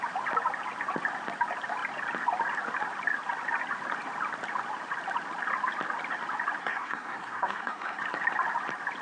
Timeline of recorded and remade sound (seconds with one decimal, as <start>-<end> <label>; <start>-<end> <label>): 0.0-6.6 recorded; 6.6-8.0 remade; 8.0-9.0 recorded